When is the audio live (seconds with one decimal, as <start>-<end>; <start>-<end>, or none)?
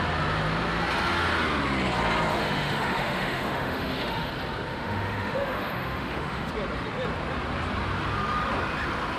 0.0-2.3; 4.3-4.7; 6.5-9.2